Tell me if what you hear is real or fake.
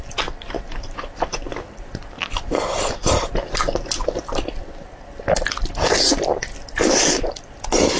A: fake